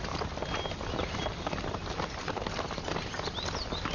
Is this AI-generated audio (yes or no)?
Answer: no